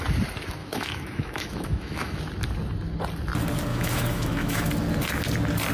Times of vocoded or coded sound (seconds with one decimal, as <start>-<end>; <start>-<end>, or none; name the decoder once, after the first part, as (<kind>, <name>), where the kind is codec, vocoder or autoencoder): 0.6-2.2 (autoencoder, DAC-VAE); 3.7-4.7